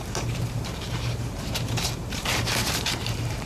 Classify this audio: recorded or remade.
remade